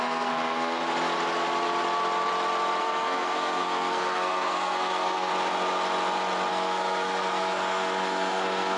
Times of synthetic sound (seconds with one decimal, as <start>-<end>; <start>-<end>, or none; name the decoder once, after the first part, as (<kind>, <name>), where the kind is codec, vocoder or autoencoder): 0.0-0.8 (codec, SNAC); 2.8-5.3; 6.5-8.8